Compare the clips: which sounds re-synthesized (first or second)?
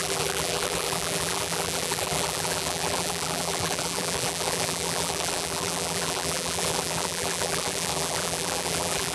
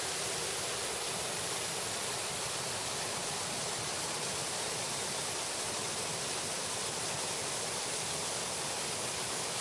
first